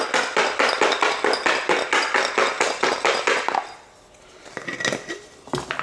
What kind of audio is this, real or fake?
real